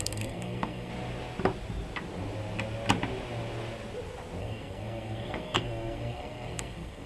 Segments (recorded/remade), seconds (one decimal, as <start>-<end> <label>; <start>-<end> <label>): 0.0-0.9 remade; 0.9-4.4 recorded; 4.4-7.1 remade